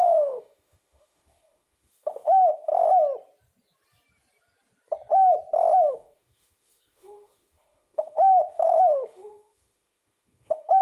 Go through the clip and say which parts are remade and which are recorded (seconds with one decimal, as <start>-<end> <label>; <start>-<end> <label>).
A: 0.0-2.7 remade; 2.7-5.9 recorded; 5.9-10.8 remade